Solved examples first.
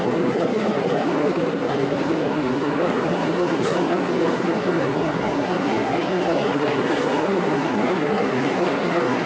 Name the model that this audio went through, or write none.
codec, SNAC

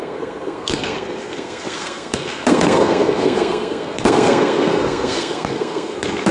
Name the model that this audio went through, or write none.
codec, SNAC